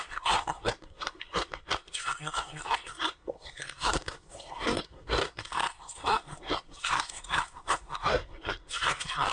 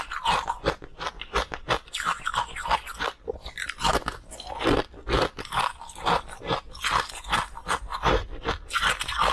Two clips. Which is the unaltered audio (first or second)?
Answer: second